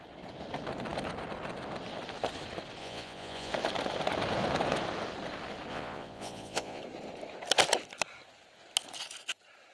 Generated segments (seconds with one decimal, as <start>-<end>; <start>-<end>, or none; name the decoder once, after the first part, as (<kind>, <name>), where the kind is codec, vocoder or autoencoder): 2.8-3.5 (vocoder, Vocos); 5.7-6.8